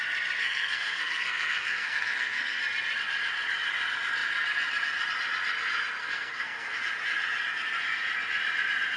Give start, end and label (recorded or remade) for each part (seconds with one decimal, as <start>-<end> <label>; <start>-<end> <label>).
0.0-0.4 recorded; 0.4-2.6 remade; 2.6-6.0 recorded; 6.0-6.8 remade; 6.8-9.0 recorded